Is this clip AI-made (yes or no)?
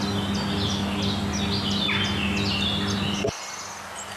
no